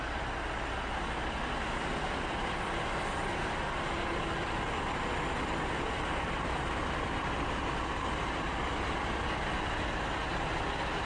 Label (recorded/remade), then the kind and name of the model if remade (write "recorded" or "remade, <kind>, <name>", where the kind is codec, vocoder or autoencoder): recorded